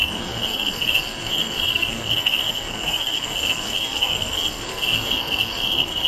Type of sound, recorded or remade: remade